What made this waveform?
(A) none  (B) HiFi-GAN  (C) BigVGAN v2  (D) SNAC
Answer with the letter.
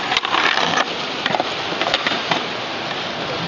A